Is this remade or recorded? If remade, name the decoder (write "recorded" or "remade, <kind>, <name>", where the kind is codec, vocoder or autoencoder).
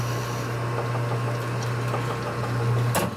recorded